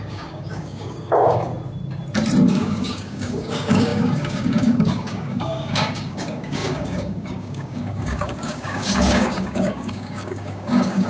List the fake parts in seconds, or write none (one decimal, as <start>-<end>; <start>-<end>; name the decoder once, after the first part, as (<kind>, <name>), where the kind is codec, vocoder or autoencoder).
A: 0.0-1.5 (codec, DAC); 2.5-11.1